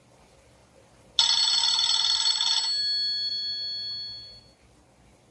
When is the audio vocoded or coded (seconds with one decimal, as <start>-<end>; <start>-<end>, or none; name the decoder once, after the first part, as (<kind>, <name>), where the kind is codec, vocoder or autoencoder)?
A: none